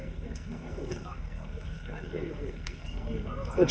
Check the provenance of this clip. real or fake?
fake